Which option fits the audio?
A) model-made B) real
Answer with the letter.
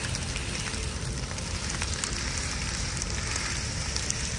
B